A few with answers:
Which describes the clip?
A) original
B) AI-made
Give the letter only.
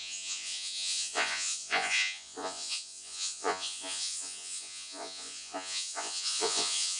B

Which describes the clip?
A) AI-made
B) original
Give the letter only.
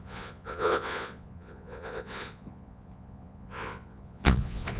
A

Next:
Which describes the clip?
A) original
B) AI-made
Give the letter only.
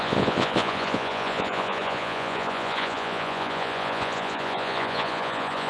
B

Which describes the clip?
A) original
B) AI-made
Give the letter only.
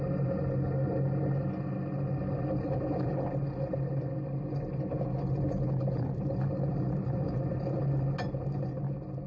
A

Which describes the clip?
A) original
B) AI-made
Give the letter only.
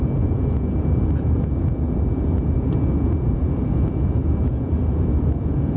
B